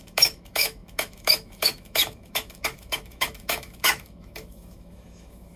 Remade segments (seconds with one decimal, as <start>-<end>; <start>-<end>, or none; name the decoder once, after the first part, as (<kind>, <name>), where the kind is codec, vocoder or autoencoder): 0.0-5.6 (autoencoder, DAC-VAE)